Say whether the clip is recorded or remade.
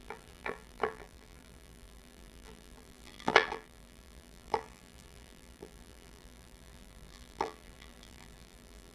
remade